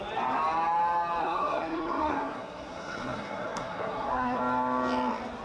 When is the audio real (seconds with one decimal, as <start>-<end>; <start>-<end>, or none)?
0.0-1.2; 4.4-5.4